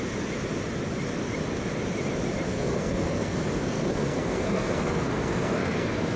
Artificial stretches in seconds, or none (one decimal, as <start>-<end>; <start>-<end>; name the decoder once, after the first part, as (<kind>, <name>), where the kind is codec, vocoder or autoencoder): 2.5-6.2 (codec, SNAC)